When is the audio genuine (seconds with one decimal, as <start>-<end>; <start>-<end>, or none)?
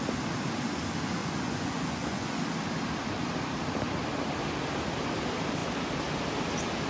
0.0-1.2; 2.4-6.9